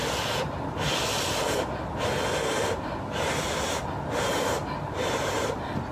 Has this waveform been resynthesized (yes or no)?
yes